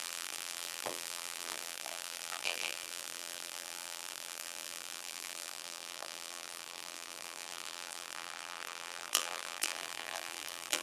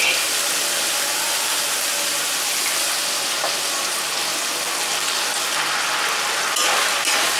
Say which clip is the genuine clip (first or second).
second